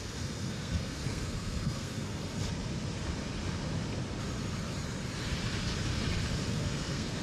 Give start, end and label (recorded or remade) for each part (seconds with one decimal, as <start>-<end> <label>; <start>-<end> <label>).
0.0-2.2 remade; 2.2-6.5 recorded; 6.5-7.2 remade